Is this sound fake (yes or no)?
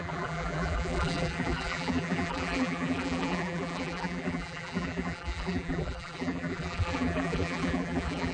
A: yes